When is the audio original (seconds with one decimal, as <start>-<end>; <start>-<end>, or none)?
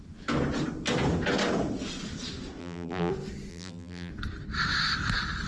0.0-2.6; 3.1-3.5; 4.1-5.5